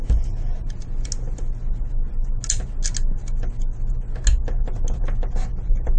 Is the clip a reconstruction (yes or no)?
no